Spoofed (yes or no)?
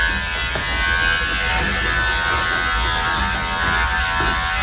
no